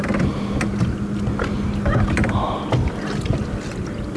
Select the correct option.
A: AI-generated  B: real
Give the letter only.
B